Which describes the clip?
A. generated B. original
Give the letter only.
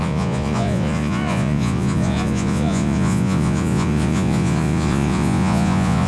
A